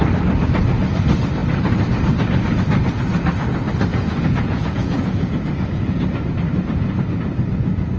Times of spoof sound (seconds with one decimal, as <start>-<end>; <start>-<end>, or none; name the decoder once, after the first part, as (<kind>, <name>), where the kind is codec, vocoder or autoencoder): 3.9-6.1 (vocoder, Vocos)